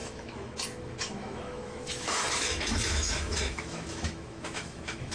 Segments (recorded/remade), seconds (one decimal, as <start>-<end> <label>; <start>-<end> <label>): 0.0-5.1 remade